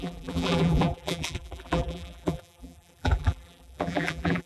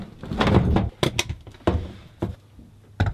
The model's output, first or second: first